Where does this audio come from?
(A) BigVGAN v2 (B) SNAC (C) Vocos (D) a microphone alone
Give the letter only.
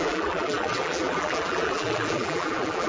A